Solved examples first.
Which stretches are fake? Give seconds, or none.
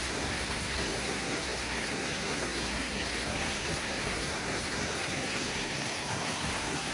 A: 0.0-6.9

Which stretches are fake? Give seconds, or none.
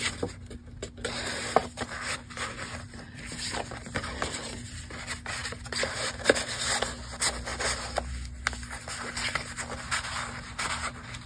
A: 1.6-4.5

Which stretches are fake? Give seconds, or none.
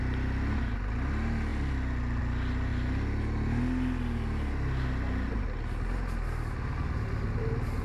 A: none